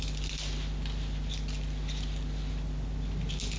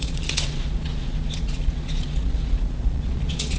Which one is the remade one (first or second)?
second